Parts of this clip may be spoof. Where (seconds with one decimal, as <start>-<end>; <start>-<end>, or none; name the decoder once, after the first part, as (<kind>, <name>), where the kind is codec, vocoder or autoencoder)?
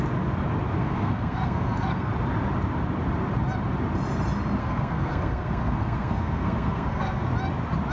0.8-2.1 (codec, SNAC); 4.6-7.3